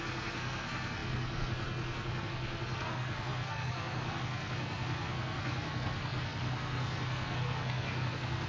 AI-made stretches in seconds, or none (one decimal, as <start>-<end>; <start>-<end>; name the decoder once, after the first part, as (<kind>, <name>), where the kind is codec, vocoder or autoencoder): 0.0-8.5 (codec, SNAC)